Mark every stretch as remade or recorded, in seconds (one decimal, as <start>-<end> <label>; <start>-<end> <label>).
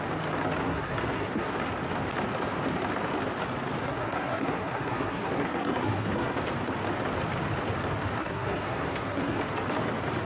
0.0-0.6 recorded; 0.6-1.5 remade; 1.5-3.8 recorded; 3.8-6.4 remade; 6.4-8.2 recorded; 8.2-9.4 remade; 9.4-10.3 recorded